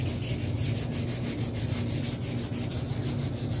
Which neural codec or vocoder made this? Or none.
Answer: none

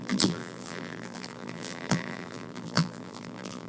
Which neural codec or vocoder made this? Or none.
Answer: vocoder, BigVGAN v2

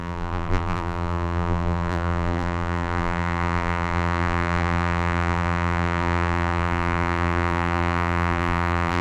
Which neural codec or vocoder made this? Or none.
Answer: vocoder, BigVGAN v2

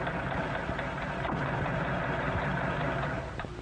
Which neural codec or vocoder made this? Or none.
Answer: vocoder, BigVGAN v2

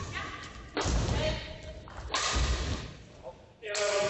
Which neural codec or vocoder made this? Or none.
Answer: none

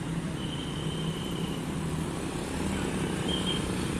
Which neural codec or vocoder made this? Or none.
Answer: none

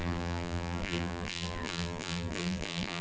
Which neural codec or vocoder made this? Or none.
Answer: vocoder, BigVGAN v2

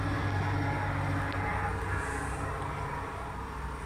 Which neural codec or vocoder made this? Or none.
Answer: none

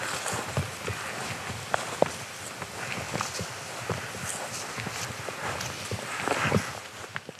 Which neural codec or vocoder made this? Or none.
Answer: none